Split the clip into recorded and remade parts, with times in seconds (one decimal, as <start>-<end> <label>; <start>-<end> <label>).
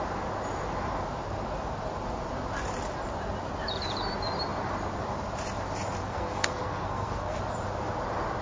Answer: 0.0-6.0 recorded; 6.0-7.4 remade; 7.4-8.4 recorded